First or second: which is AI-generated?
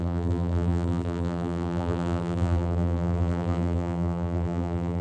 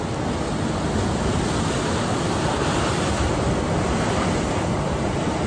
first